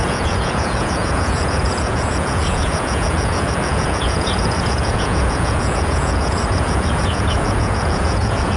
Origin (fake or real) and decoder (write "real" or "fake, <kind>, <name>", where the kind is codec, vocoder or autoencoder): fake, vocoder, Vocos